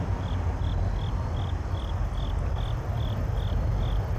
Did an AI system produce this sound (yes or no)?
no